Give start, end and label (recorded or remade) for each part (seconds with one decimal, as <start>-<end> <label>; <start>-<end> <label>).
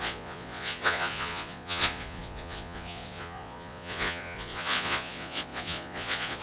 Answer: 0.0-6.4 remade